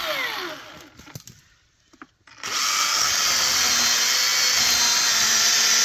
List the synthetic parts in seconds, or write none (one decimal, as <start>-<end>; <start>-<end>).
none